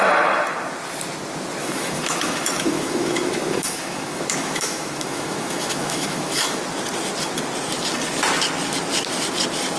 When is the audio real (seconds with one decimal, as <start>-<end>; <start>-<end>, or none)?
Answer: 0.0-1.6; 6.6-9.8